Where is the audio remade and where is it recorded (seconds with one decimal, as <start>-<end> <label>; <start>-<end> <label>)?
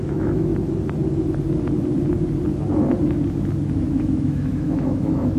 0.0-0.5 remade; 0.5-3.7 recorded; 3.7-5.4 remade